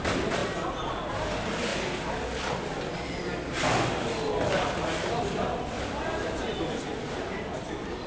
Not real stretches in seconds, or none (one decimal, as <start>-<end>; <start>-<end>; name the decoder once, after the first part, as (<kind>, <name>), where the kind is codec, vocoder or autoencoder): none